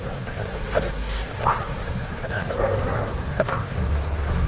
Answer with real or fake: fake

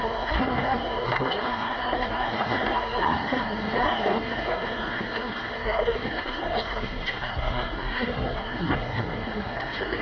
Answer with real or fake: fake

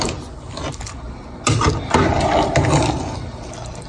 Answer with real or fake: real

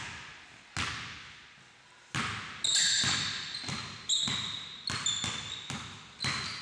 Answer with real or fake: real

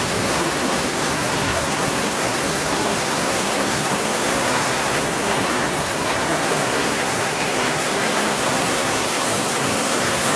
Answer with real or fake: fake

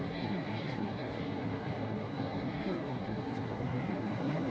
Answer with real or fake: fake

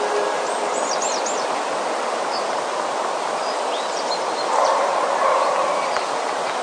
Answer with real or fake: real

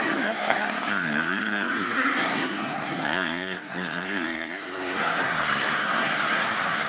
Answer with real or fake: fake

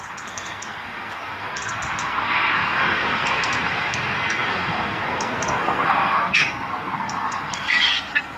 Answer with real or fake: fake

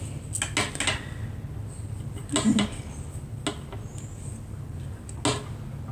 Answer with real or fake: real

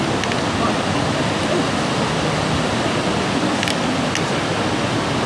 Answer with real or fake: real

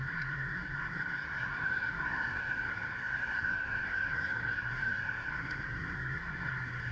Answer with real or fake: fake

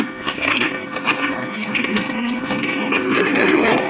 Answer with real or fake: fake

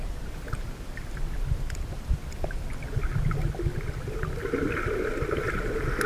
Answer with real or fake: real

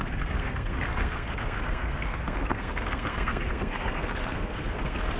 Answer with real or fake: fake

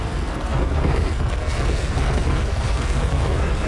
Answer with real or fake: fake